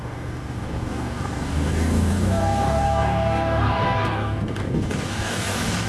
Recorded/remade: remade